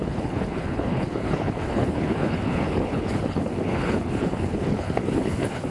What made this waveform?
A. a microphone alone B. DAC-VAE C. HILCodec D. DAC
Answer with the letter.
C